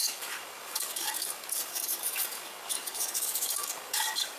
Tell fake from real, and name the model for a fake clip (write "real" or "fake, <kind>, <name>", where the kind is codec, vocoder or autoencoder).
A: fake, codec, DAC